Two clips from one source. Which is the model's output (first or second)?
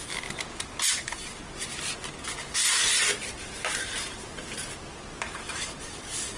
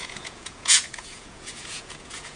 second